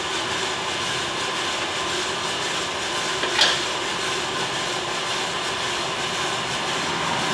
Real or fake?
real